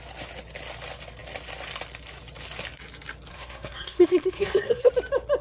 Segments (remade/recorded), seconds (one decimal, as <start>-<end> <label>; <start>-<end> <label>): 0.0-3.3 recorded; 3.3-4.9 remade; 4.9-5.4 recorded